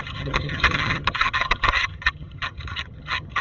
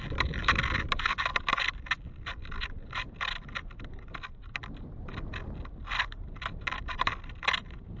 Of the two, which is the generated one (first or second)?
first